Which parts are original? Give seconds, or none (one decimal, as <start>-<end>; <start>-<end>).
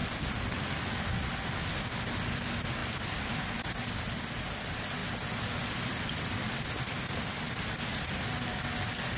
0.6-2.8; 4.5-5.0; 6.7-7.9